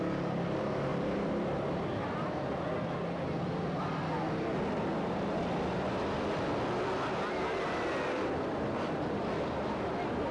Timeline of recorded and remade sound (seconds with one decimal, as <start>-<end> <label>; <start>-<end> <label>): 0.0-0.9 recorded; 0.9-1.8 remade; 1.8-10.3 recorded